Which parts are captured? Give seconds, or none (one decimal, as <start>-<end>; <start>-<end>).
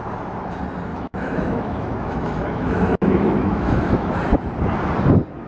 0.0-0.9; 4.2-5.5